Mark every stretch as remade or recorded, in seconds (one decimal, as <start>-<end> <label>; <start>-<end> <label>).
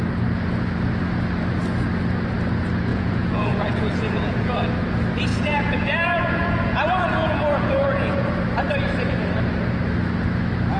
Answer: 0.0-2.9 recorded; 2.9-4.5 remade; 4.5-5.3 recorded; 5.3-8.3 remade; 8.3-10.8 recorded